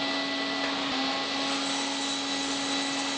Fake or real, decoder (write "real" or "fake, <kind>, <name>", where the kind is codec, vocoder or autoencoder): real